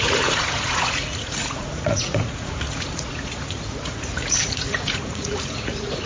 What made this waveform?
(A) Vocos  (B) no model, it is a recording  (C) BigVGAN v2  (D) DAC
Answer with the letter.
A